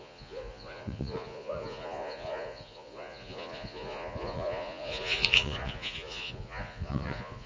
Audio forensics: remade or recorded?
remade